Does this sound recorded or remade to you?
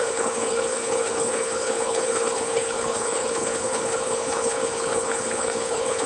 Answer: remade